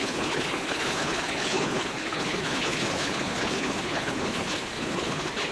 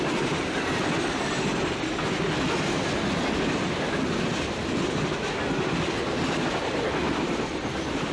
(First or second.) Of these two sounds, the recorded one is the second